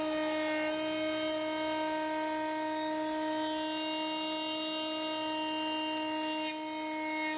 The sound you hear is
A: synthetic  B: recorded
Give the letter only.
B